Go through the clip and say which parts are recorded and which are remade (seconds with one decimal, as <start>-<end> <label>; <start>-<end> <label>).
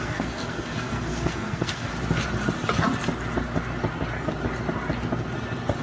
0.0-1.9 remade; 1.9-5.8 recorded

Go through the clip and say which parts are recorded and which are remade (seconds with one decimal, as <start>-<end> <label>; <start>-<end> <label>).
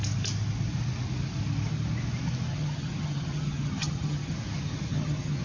0.0-2.5 recorded; 2.5-4.3 remade; 4.3-4.9 recorded; 4.9-5.4 remade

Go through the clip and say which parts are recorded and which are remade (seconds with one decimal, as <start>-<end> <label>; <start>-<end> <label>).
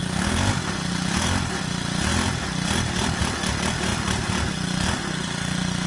0.0-0.5 remade; 0.5-5.9 recorded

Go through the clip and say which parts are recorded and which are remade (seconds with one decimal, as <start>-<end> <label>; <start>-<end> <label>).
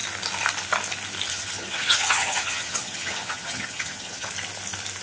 0.0-1.3 recorded; 1.3-4.3 remade; 4.3-5.0 recorded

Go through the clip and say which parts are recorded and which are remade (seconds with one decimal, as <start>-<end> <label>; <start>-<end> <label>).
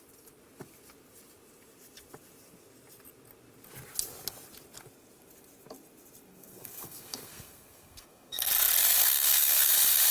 0.0-6.3 recorded; 6.3-8.5 remade; 8.5-9.0 recorded; 9.0-9.7 remade; 9.7-10.1 recorded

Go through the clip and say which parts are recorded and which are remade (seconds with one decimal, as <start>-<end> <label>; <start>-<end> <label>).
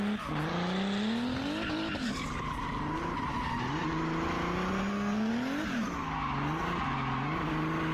0.0-4.8 recorded; 4.8-5.3 remade; 5.3-7.9 recorded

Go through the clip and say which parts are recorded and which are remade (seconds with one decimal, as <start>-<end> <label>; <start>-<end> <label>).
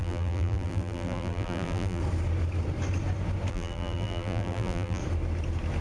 0.0-2.0 remade; 2.0-3.5 recorded; 3.5-5.0 remade; 5.0-5.8 recorded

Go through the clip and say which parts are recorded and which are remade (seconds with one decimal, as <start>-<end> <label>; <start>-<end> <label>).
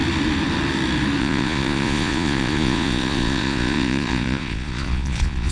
0.0-1.2 recorded; 1.2-5.5 remade